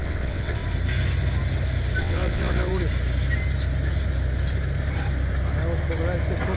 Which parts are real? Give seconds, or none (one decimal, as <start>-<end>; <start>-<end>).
0.6-2.0; 2.7-6.6